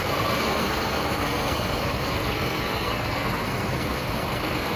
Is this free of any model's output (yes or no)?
no